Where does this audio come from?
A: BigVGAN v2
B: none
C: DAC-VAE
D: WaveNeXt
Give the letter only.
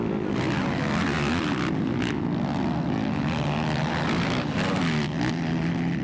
B